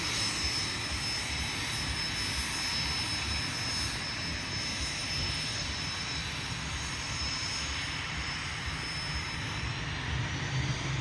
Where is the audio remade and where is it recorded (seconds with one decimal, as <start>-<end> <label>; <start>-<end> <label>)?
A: 0.0-5.0 recorded; 5.0-7.3 remade; 7.3-11.0 recorded